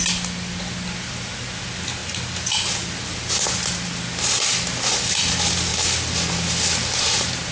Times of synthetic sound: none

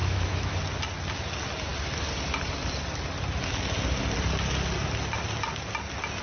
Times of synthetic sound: 0.0-0.5 (autoencoder, DAC-VAE)